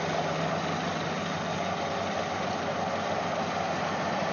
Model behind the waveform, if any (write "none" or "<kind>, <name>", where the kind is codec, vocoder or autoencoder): none